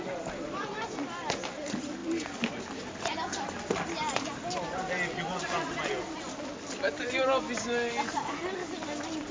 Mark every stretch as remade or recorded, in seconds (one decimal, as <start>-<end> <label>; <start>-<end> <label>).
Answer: 0.0-9.3 recorded